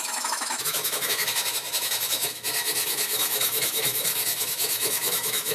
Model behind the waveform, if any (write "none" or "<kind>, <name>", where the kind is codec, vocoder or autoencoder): autoencoder, DAC-VAE